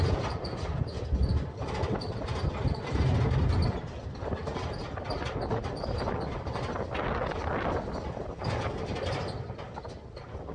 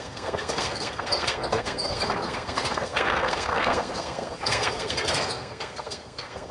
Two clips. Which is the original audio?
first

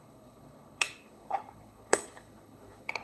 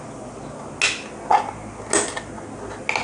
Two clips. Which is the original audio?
second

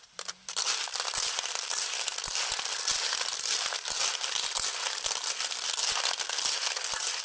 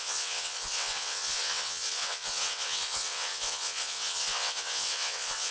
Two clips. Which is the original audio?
first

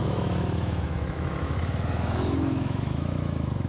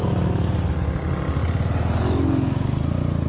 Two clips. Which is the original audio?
second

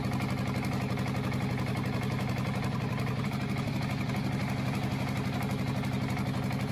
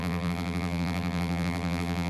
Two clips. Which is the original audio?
first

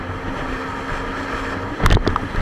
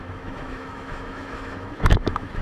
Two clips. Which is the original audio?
first